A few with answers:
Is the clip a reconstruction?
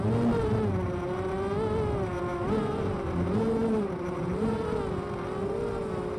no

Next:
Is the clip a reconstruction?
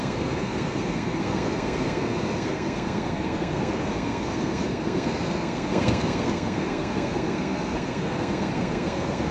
yes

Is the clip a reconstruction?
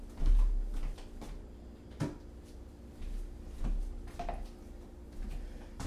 no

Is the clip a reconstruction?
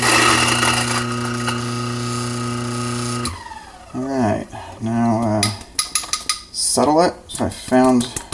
no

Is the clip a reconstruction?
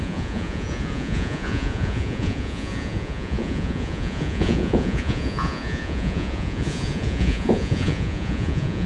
yes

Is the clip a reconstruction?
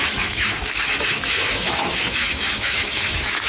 yes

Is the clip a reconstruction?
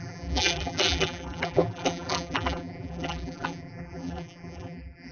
yes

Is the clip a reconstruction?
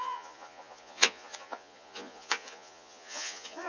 yes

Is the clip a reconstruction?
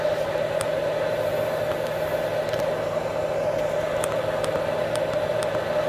no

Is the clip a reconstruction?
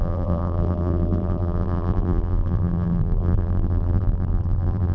yes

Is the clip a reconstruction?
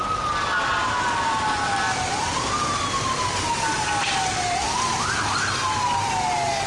no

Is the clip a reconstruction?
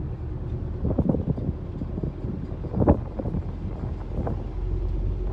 no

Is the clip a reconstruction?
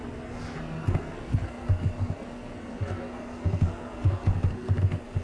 yes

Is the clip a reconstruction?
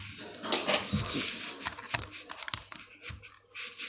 no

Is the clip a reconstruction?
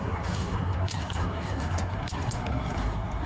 yes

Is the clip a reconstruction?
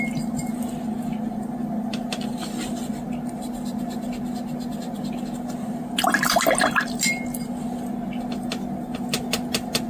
no